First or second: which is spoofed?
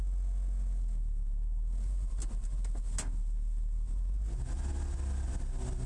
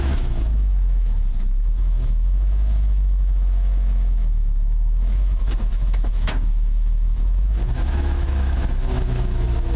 second